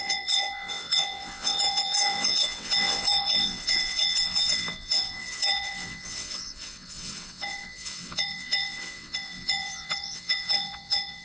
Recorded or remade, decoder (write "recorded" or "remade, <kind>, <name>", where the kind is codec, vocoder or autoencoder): remade, vocoder, WaveNeXt